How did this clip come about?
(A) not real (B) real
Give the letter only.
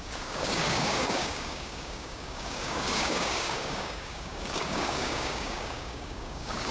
A